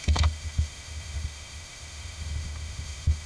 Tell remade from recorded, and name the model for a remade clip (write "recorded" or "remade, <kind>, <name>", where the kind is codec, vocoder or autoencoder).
remade, autoencoder, DAC-VAE